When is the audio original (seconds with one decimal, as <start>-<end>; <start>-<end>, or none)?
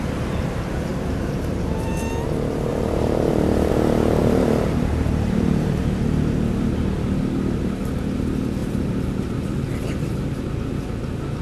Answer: 0.0-0.9; 1.9-2.7; 3.7-4.2; 5.8-8.6; 9.3-11.4